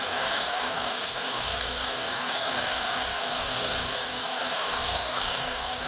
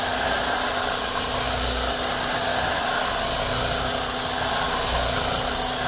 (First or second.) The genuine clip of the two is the second